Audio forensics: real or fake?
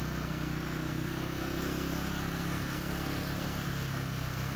fake